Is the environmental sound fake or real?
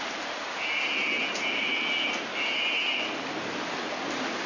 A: real